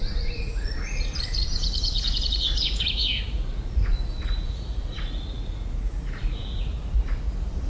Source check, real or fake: fake